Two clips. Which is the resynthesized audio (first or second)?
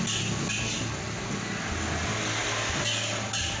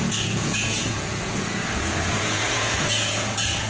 second